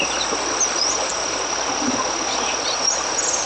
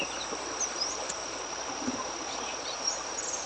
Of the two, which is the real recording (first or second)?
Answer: first